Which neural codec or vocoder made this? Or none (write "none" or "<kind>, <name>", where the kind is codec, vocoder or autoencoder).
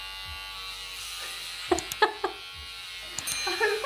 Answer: none